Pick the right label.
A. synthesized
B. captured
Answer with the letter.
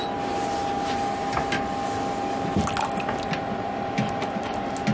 B